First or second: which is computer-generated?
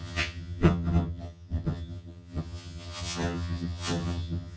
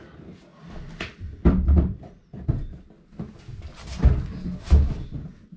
first